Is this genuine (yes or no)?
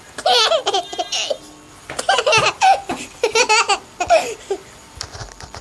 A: yes